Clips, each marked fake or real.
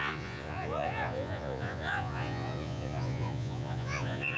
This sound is fake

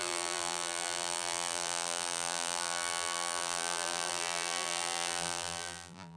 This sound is fake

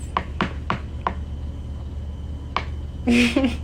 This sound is real